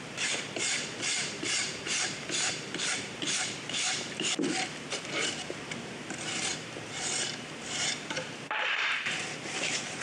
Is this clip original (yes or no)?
no